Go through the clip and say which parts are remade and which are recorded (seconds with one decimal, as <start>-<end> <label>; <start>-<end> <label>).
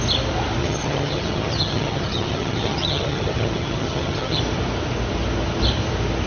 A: 0.0-0.6 recorded; 0.6-4.4 remade; 4.4-6.3 recorded